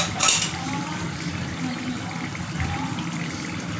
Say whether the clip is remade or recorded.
recorded